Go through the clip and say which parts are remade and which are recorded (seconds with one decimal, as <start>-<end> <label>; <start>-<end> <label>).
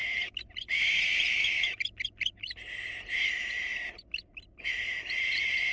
0.0-0.5 recorded; 0.5-3.7 remade; 3.7-4.6 recorded; 4.6-5.7 remade